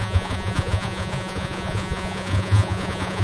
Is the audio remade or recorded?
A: remade